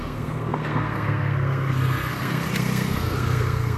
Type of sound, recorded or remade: remade